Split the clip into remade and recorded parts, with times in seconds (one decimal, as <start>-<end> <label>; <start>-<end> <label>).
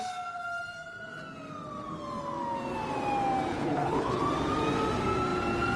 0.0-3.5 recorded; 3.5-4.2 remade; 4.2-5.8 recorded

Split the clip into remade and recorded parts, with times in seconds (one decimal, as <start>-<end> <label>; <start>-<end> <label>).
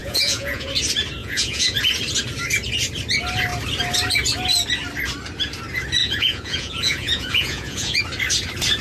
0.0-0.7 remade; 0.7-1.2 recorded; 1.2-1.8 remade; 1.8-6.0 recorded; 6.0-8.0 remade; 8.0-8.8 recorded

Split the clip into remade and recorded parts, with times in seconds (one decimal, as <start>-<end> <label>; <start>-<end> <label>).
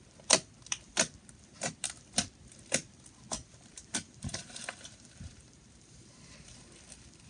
0.0-3.4 recorded; 3.4-6.7 remade; 6.7-7.3 recorded